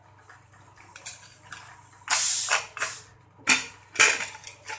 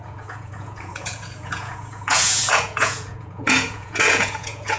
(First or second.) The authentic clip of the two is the first